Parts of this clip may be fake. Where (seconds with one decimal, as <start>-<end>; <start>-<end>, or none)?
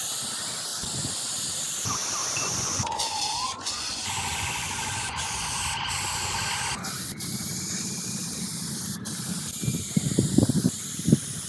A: 2.2-5.6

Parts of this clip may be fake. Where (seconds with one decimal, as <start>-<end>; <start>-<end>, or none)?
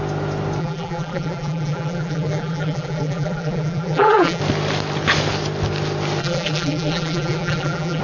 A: 0.6-4.4; 6.2-8.0